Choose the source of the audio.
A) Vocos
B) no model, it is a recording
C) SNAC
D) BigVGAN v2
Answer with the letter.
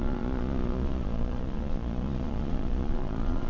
A